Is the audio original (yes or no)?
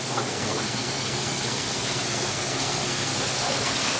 no